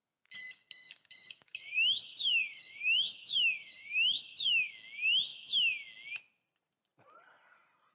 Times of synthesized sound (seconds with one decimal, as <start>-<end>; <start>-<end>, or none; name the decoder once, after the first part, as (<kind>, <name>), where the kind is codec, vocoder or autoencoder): 0.0-4.7 (codec, DAC)